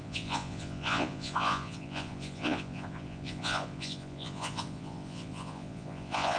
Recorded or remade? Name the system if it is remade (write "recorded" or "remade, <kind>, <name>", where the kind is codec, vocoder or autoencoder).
remade, vocoder, Vocos